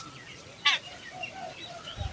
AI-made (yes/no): no